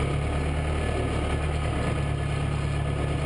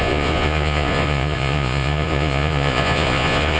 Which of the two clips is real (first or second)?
first